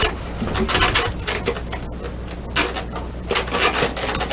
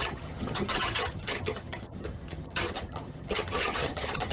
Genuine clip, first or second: first